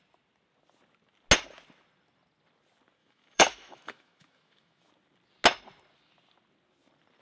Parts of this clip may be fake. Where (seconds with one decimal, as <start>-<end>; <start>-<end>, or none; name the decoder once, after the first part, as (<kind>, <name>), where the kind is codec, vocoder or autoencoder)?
3.0-4.9 (autoencoder, DAC-VAE)